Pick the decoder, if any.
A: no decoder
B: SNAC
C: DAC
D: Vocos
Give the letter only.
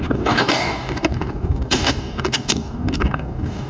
C